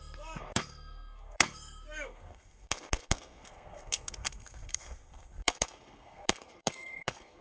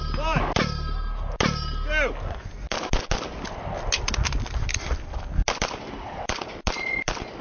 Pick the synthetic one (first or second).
first